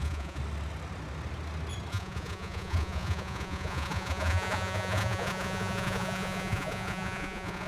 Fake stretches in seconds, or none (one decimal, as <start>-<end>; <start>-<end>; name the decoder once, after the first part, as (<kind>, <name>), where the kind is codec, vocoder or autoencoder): 0.0-0.4 (vocoder, Vocos); 1.9-7.7